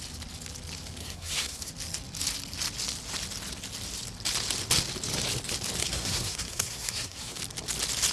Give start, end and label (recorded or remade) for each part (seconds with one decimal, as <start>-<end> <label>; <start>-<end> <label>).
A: 0.0-1.0 recorded; 1.0-1.7 remade; 1.7-5.8 recorded; 5.8-7.4 remade; 7.4-8.1 recorded